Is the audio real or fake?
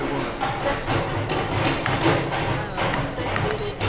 real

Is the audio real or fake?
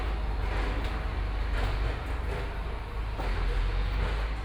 real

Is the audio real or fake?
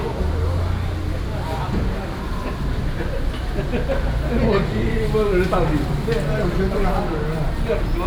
real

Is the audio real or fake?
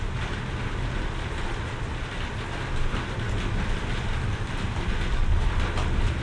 real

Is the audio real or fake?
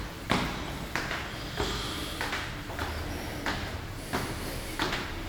real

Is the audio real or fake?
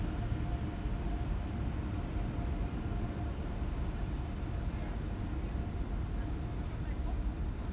real